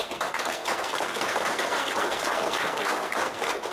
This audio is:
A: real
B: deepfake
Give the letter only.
B